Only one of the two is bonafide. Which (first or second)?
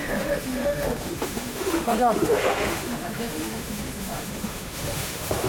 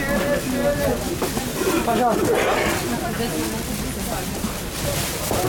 second